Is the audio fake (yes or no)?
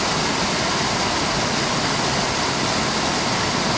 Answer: no